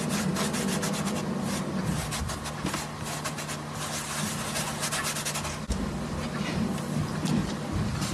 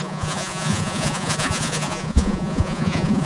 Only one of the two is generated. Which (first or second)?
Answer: second